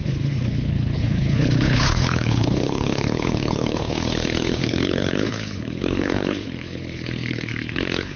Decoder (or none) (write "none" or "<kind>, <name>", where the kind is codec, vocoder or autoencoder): codec, HILCodec